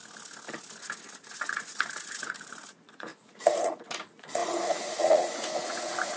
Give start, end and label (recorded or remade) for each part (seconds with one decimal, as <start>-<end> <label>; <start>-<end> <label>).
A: 0.0-1.4 recorded; 1.4-6.2 remade